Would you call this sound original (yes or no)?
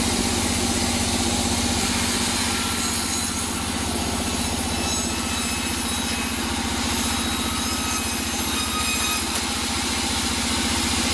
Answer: yes